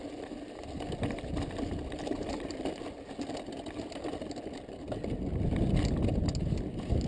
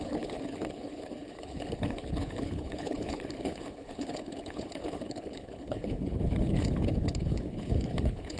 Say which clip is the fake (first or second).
second